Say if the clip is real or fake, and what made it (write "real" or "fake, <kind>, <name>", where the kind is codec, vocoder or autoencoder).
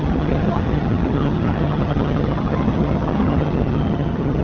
fake, vocoder, HiFi-GAN